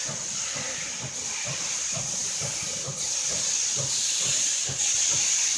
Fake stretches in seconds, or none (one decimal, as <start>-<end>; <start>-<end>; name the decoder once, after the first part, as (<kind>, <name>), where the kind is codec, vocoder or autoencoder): none